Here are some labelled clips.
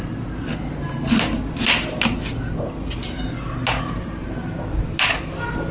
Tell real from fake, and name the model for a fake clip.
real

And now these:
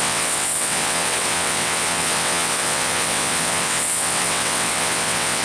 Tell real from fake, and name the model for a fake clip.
fake, vocoder, WaveNeXt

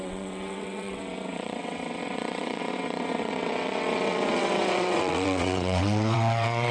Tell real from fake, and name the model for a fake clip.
fake, vocoder, WaveNeXt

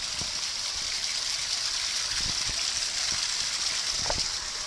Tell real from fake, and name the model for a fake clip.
real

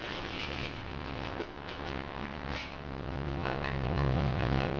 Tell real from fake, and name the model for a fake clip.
fake, vocoder, WaveNeXt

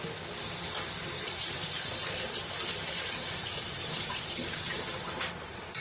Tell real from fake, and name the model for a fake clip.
real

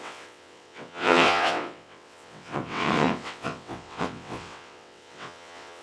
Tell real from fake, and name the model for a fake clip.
fake, vocoder, WaveNeXt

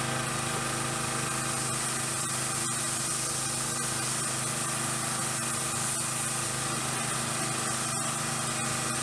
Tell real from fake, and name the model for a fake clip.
real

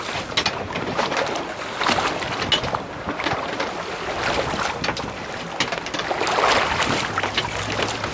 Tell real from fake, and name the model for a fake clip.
real